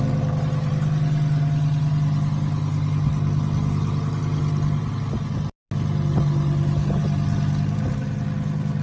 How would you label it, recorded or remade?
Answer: recorded